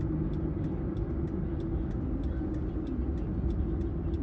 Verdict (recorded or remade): recorded